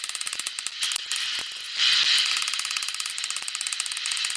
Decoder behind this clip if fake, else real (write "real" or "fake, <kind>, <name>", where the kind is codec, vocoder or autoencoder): real